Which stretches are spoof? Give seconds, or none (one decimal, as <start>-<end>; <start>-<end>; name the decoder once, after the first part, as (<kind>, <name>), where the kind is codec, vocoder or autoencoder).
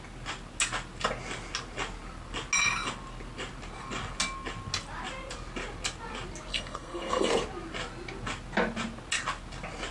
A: 6.5-7.3 (codec, SNAC)